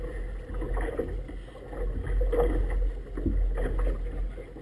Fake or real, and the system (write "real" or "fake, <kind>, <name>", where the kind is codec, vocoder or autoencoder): real